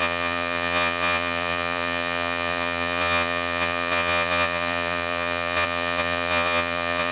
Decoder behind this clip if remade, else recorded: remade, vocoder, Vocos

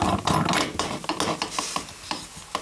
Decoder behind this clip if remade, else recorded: recorded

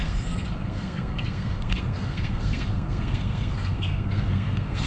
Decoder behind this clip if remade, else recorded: remade, codec, SNAC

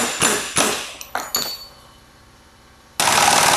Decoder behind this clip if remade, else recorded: recorded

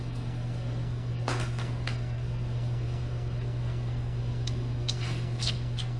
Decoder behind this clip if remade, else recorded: remade, codec, SNAC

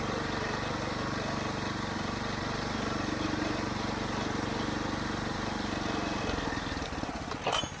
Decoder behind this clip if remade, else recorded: recorded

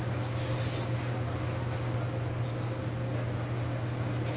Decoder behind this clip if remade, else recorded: recorded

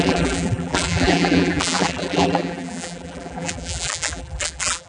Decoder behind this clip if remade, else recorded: remade, vocoder, BigVGAN v2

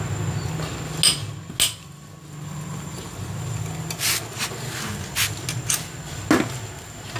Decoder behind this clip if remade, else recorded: recorded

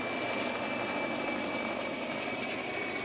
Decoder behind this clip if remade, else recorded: recorded